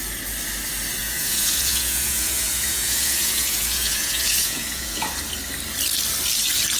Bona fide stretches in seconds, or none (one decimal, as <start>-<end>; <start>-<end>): 0.0-1.0; 5.1-6.8